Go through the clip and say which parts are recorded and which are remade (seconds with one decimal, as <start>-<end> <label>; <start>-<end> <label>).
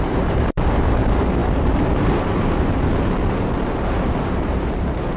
0.0-5.2 remade